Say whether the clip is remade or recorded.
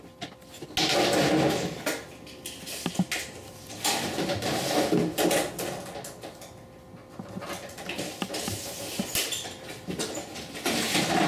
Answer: recorded